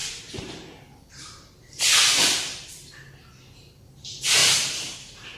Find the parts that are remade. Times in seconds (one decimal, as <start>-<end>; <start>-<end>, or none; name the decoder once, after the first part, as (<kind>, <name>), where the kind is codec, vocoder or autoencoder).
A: none